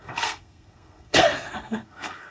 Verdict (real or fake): fake